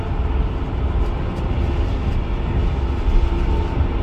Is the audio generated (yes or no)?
no